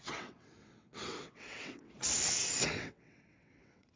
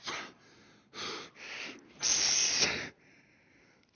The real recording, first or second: second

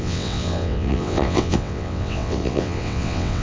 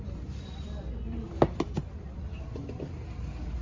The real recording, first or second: second